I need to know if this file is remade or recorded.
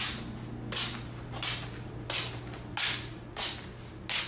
recorded